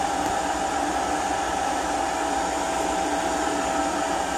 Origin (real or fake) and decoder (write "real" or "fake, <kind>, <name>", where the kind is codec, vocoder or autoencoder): real